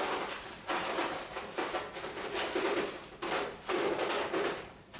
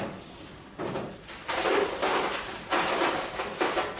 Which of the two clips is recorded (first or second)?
second